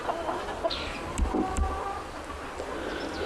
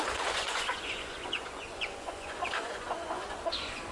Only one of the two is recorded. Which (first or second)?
first